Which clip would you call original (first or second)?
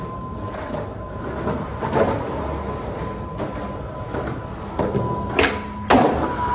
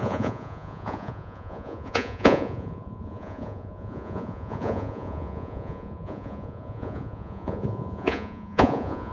first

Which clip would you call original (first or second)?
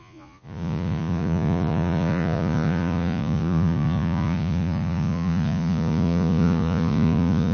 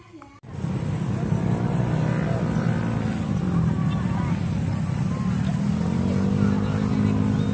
second